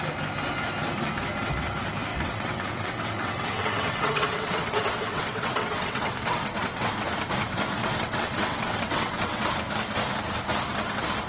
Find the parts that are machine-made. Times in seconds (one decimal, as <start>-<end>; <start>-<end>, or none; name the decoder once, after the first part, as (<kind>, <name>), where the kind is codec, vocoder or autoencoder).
2.1-6.9 (vocoder, WaveNeXt); 7.8-9.5